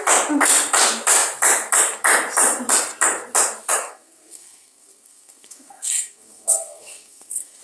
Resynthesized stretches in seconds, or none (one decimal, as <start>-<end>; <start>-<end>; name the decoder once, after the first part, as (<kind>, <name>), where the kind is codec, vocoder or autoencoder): 3.8-7.6 (codec, SNAC)